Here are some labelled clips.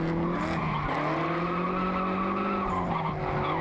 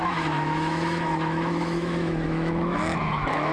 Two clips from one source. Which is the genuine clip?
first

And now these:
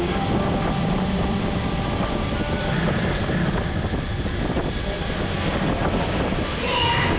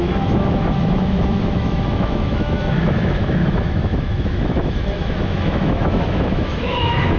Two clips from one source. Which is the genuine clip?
first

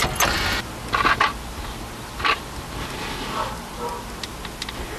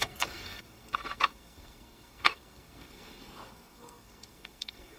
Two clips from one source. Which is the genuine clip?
first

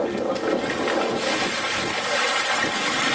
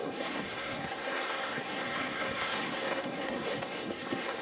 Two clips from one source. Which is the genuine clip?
first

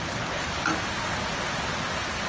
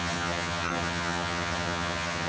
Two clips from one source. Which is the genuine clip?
first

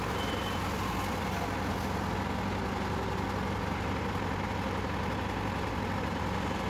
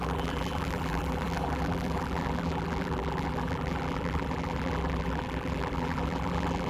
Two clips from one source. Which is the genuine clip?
first